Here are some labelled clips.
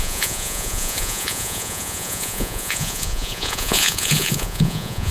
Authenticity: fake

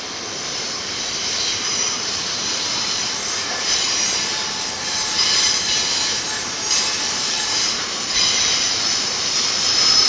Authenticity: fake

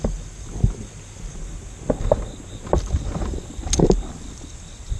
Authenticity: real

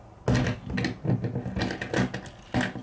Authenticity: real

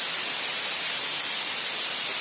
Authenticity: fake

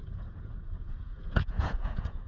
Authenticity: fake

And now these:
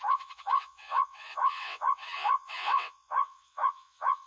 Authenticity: fake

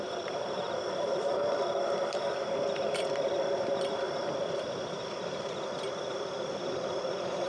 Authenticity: fake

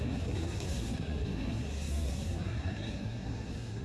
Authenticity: fake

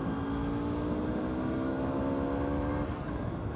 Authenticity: real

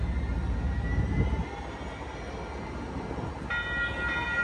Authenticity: real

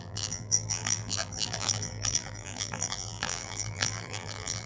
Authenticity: fake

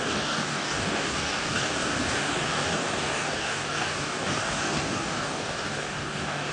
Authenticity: fake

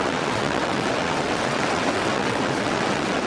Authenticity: fake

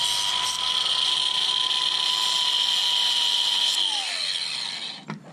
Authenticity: real